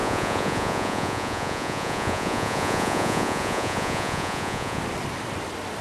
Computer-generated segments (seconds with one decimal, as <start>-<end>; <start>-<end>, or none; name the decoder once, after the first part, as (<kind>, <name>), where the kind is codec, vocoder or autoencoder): 0.0-4.8 (vocoder, Vocos)

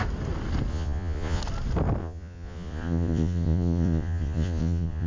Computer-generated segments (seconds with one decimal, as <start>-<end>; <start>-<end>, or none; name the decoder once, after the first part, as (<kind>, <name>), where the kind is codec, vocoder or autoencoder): 0.7-1.4 (vocoder, Vocos); 2.0-5.1

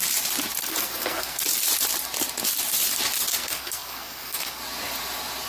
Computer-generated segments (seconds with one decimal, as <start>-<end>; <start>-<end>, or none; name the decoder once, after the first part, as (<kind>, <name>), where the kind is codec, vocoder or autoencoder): 0.6-1.4 (codec, SNAC); 3.3-4.6

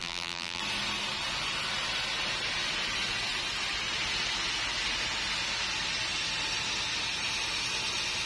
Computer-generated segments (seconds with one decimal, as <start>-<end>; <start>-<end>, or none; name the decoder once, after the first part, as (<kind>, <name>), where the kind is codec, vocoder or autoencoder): 0.0-0.6 (vocoder, BigVGAN v2)